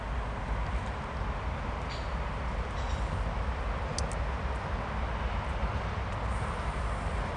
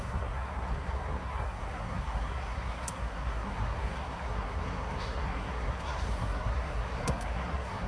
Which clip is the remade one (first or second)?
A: second